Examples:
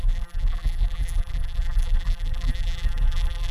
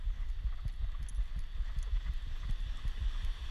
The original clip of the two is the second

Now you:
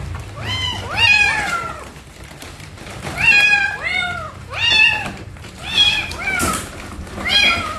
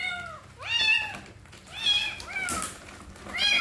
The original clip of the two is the second